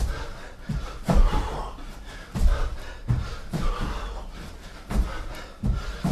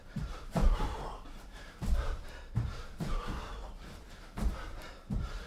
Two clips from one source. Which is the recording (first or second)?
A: first